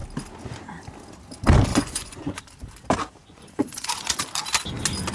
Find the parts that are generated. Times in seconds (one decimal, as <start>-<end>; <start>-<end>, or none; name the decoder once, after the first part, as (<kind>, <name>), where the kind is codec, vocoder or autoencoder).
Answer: 1.7-2.4 (vocoder, Vocos); 3.2-4.2